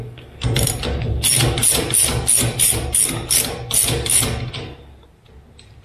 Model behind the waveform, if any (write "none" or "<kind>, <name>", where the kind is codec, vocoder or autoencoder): none